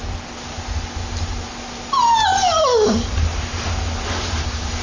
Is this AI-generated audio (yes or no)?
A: no